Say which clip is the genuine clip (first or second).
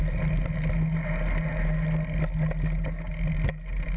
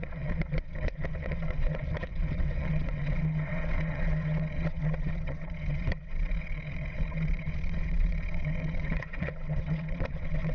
first